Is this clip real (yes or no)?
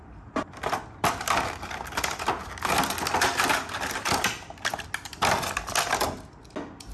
yes